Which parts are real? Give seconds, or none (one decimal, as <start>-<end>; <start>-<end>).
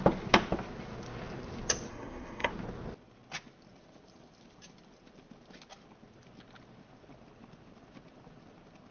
0.0-1.9; 2.5-8.9